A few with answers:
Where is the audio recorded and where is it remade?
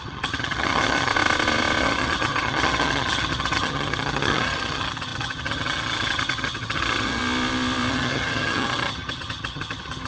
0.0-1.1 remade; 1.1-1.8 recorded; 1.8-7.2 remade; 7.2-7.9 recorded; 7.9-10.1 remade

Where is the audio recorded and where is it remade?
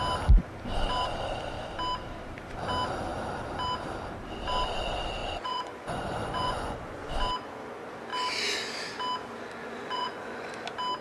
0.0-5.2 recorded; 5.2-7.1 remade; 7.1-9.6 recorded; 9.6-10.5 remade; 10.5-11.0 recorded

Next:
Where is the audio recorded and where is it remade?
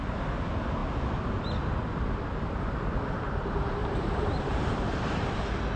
0.0-3.8 recorded; 3.8-5.1 remade; 5.1-5.8 recorded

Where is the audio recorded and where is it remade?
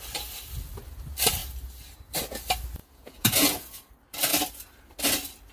0.0-2.8 recorded; 2.8-3.9 remade; 3.9-5.5 recorded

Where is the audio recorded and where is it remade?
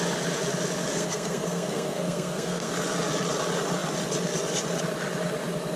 0.0-0.9 recorded; 0.9-2.7 remade; 2.7-5.8 recorded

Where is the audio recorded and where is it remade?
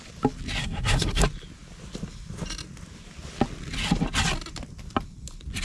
0.0-0.6 recorded; 0.6-1.2 remade; 1.2-5.6 recorded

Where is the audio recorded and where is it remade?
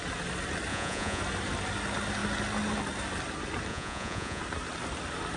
0.0-0.7 recorded; 0.7-1.2 remade; 1.2-3.7 recorded; 3.7-4.4 remade; 4.4-5.4 recorded